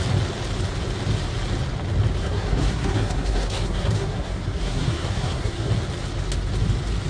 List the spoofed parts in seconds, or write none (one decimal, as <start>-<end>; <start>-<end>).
2.2-5.7